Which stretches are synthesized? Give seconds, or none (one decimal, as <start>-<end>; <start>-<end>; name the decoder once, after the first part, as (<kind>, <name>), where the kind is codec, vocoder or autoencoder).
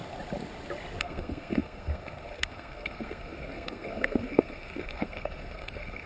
1.0-6.1 (codec, SNAC)